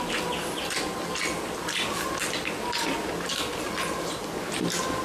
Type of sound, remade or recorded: recorded